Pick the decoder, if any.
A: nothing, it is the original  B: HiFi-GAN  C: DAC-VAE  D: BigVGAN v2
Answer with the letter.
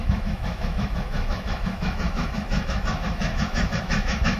C